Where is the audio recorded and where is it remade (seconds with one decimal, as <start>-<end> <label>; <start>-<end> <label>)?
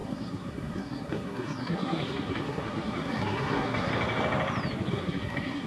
0.0-3.9 remade; 3.9-4.9 recorded; 4.9-5.7 remade